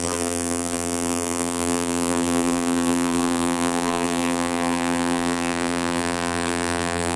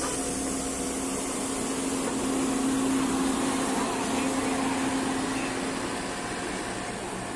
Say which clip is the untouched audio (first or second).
second